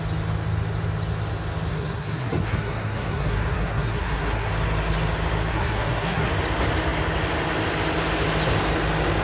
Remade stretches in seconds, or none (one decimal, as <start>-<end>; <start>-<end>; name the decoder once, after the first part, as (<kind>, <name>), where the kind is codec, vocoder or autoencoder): 1.7-4.5 (codec, SNAC); 5.5-6.3